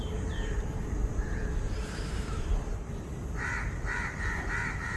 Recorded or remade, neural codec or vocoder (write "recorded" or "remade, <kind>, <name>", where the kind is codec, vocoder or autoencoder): remade, vocoder, BigVGAN v2